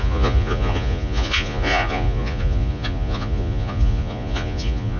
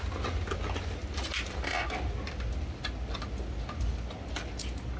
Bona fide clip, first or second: second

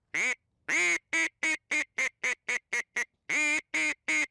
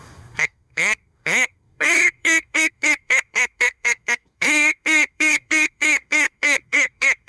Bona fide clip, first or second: first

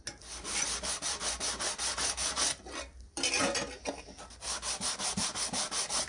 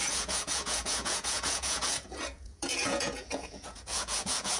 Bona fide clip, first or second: first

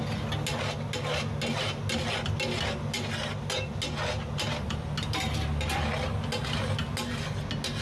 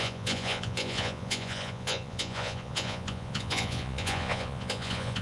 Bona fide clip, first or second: first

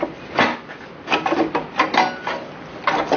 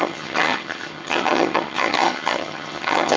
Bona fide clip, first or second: first